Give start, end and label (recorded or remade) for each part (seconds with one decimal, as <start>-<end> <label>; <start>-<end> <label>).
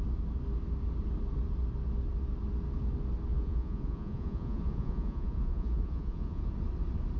0.0-3.3 recorded; 3.3-6.5 remade; 6.5-7.2 recorded